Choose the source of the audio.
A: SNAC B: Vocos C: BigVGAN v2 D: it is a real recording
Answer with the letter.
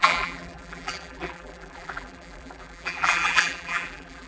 C